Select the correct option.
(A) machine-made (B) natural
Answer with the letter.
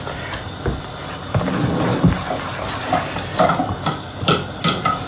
B